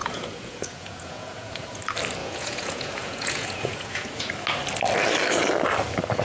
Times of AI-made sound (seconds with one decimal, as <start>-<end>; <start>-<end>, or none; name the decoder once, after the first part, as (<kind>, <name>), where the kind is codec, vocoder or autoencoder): 0.0-1.8 (vocoder, Vocos); 2.2-4.3

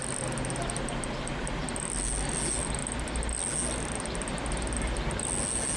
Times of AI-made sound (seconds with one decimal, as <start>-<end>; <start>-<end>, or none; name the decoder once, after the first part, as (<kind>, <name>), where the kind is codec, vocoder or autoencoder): none

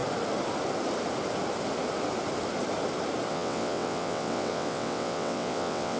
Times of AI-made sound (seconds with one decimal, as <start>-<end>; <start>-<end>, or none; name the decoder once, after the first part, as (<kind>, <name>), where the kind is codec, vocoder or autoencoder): 3.3-6.0 (vocoder, WaveNeXt)

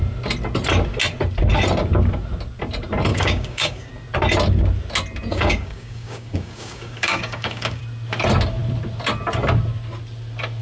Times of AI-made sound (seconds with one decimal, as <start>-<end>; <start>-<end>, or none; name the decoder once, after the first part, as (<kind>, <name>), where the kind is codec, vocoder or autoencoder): 3.1-3.9 (codec, DAC); 5.3-7.8

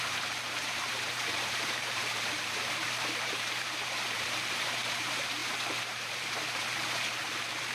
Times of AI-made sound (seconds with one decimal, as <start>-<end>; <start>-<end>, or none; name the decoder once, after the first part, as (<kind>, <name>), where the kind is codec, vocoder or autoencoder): 0.0-7.7 (vocoder, BigVGAN v2)